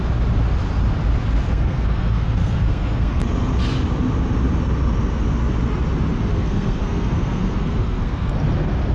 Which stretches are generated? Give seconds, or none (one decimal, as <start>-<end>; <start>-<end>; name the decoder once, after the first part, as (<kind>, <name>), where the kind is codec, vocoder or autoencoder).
1.5-3.2 (codec, SNAC); 6.3-8.4